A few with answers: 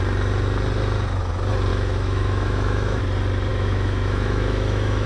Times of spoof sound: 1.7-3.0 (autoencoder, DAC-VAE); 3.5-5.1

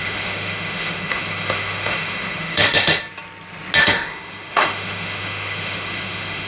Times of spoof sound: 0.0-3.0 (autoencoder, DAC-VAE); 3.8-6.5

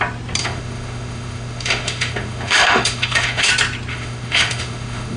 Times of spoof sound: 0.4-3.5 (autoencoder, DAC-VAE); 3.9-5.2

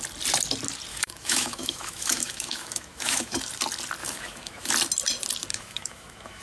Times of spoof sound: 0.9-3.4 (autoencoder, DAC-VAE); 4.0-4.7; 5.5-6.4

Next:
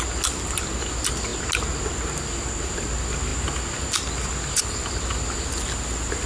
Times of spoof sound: none

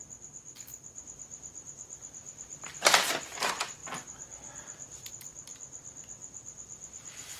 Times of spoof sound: none

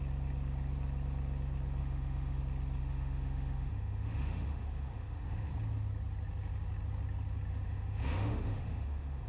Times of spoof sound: 1.8-2.4 (autoencoder, DAC-VAE); 2.8-5.5; 7.5-9.3